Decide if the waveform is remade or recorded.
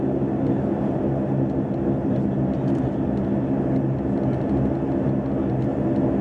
recorded